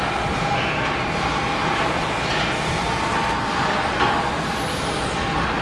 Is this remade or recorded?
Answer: recorded